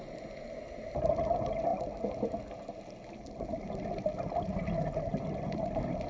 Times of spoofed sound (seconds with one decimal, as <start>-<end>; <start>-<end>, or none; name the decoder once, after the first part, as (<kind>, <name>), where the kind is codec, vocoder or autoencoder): none